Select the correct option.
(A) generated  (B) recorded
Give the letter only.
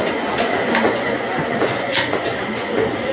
A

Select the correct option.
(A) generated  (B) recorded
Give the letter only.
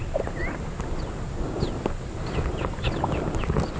B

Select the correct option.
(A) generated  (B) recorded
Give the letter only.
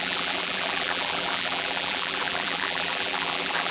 A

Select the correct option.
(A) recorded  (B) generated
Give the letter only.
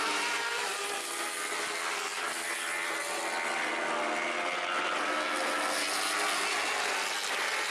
A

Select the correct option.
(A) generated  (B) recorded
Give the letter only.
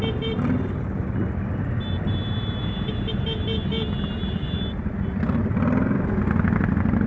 B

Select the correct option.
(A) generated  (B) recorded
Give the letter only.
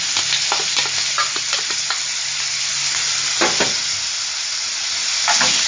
B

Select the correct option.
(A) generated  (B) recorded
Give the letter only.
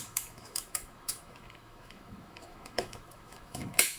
A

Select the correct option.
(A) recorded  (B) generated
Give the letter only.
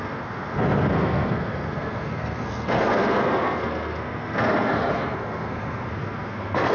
B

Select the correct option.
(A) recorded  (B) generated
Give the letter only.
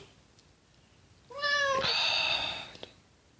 A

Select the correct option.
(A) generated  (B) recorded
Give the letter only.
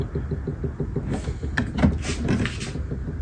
B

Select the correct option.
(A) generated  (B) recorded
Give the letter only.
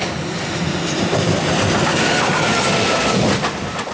B